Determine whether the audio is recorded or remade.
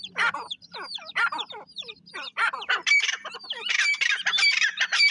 remade